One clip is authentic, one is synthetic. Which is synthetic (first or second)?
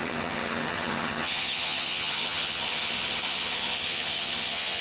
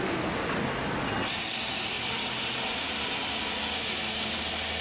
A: first